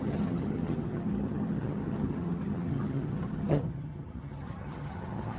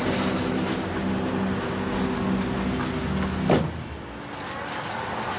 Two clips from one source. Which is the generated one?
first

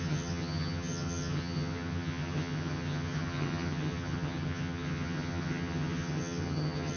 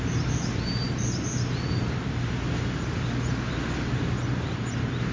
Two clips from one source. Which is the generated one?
first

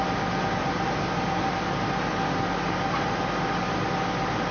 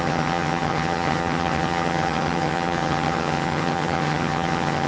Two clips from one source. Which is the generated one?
second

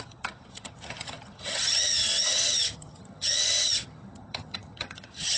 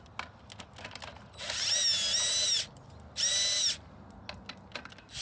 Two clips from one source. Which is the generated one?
first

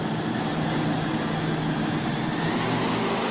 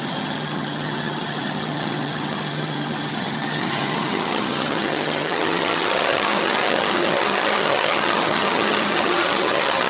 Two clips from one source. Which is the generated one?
second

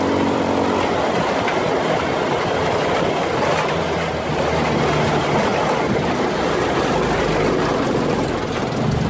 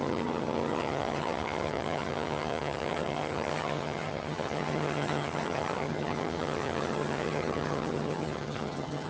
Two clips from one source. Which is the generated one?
second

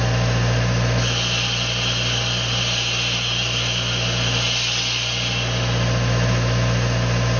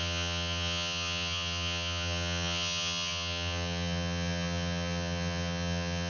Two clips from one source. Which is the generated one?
second